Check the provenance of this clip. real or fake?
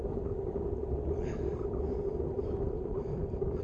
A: real